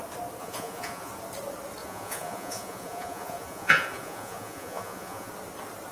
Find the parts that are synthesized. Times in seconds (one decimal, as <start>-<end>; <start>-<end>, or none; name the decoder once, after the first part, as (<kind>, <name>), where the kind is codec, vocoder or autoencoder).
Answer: 0.4-1.1 (vocoder, Vocos); 1.8-5.3